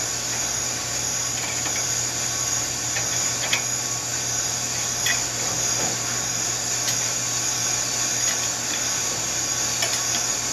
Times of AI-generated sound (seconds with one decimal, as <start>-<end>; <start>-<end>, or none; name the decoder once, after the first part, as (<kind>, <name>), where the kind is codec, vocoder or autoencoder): none